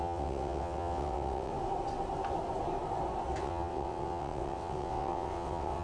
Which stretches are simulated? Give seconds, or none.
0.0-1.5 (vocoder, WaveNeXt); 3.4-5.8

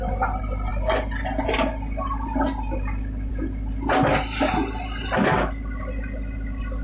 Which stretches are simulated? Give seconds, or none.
none

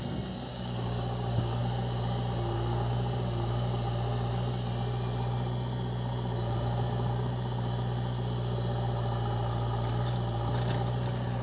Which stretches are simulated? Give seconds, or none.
0.5-1.6 (codec, DAC)

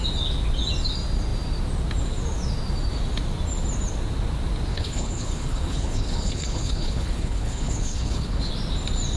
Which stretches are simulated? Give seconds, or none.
4.7-8.5 (codec, HILCodec)

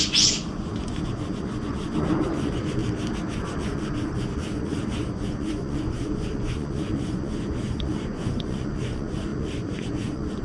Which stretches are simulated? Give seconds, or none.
0.0-2.8 (vocoder, Vocos); 3.4-10.4